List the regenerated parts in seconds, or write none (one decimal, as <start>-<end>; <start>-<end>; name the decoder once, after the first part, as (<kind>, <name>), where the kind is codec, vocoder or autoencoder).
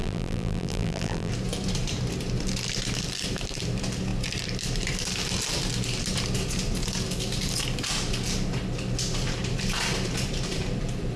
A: 0.0-1.3 (vocoder, BigVGAN v2)